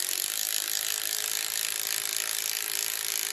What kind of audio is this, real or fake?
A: real